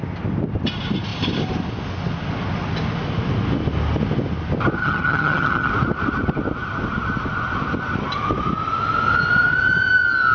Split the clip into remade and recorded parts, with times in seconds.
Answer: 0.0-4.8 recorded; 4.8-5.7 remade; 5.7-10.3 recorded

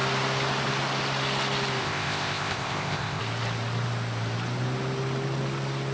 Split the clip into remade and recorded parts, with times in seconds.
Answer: 0.0-1.8 recorded; 1.8-3.2 remade; 3.2-5.9 recorded

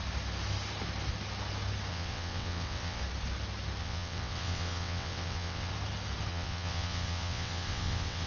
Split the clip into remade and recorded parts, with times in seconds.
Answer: 0.0-1.9 recorded; 1.9-3.0 remade; 3.0-3.8 recorded; 3.8-5.7 remade; 5.7-6.3 recorded; 6.3-8.3 remade